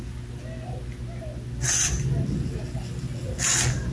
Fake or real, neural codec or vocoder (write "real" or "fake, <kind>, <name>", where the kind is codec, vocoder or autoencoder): real